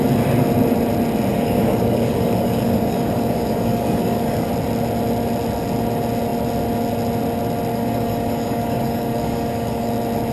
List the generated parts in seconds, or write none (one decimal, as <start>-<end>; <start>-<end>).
1.3-4.5; 7.7-9.9